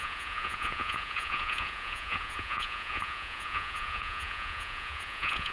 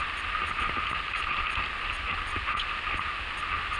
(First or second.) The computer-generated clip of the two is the first